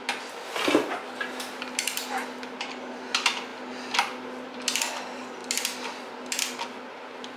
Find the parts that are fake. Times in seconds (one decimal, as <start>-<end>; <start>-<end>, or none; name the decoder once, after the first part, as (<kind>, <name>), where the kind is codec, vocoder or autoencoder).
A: none